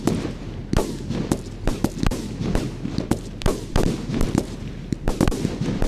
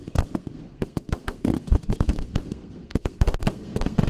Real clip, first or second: first